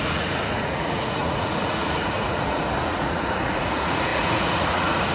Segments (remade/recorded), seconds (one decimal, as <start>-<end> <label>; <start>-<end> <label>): 0.0-5.1 remade